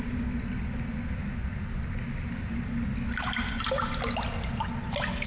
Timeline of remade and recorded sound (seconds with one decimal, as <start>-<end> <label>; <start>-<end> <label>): 0.0-5.3 recorded